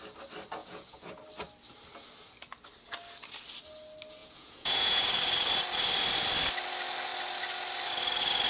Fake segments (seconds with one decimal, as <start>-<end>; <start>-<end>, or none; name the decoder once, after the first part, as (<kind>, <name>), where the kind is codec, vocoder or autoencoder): 0.6-1.1 (vocoder, Vocos); 4.2-5.0